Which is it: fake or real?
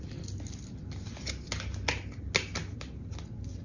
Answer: real